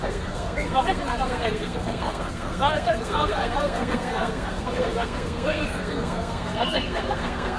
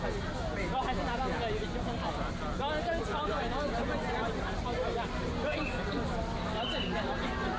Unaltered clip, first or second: second